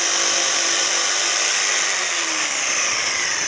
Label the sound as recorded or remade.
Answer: recorded